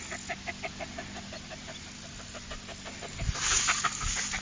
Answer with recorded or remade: recorded